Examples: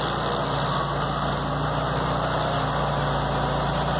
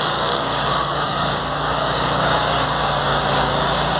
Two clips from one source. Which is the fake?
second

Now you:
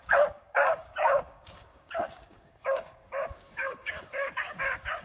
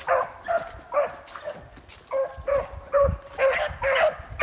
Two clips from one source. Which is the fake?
first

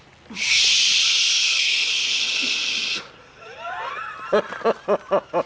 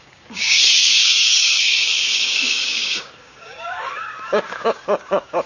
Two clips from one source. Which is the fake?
second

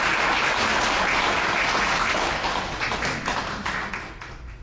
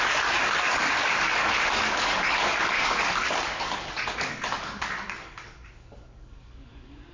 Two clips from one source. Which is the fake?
second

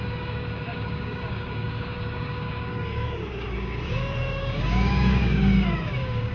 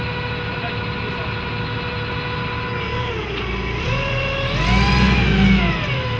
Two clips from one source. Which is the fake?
first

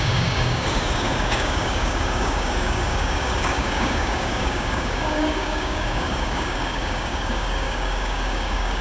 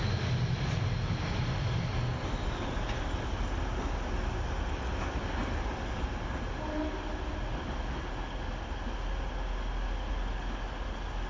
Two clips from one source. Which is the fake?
first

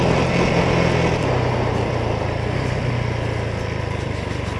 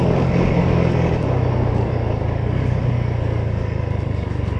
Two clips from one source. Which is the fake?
second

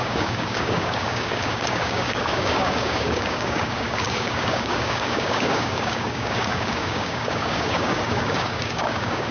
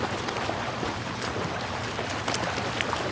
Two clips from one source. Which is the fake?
first